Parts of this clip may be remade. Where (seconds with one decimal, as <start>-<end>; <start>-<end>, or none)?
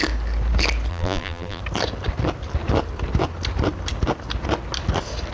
0.9-1.6